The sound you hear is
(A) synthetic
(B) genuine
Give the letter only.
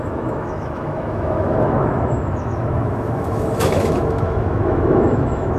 A